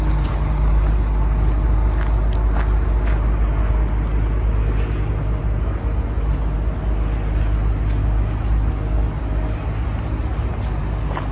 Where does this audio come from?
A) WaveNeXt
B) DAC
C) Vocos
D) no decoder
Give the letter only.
D